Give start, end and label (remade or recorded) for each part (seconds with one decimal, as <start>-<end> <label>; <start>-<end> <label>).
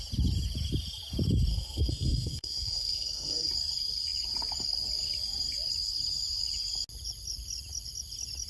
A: 0.0-1.5 recorded; 1.5-3.5 remade; 3.5-8.5 recorded